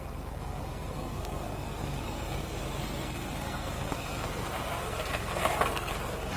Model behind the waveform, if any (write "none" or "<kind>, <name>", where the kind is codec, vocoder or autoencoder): codec, SNAC